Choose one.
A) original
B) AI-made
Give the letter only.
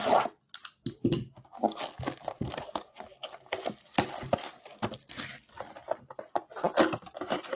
A